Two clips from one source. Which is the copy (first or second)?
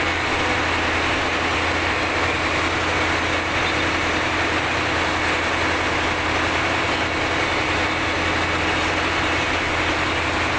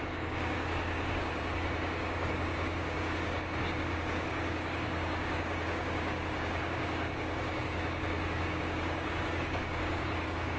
second